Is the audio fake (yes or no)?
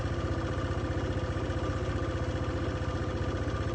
no